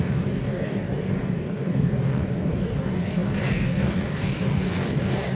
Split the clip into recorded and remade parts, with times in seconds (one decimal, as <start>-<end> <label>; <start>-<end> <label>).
0.0-5.3 remade